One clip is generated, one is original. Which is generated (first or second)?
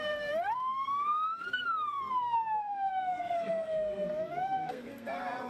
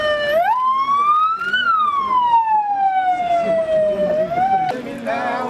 first